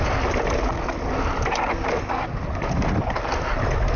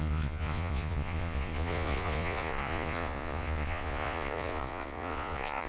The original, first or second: first